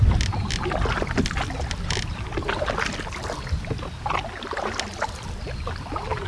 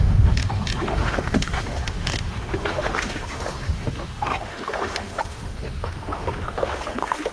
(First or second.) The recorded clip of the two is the first